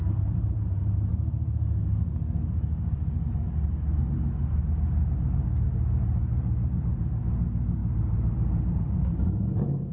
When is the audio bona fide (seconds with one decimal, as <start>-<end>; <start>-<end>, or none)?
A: 0.5-6.3; 7.2-7.8